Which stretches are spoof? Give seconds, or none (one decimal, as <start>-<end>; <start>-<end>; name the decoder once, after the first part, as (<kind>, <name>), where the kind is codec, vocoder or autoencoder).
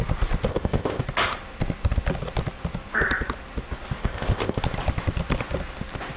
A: 0.5-1.0 (codec, ZipCodec); 4.0-4.6